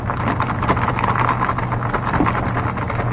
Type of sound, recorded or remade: recorded